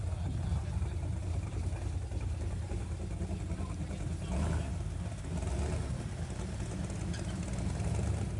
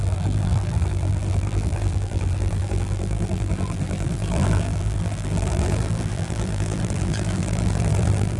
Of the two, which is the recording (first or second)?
first